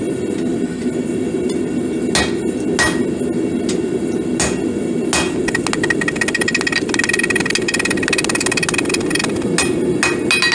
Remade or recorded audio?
recorded